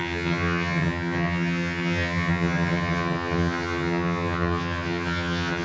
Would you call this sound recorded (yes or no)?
no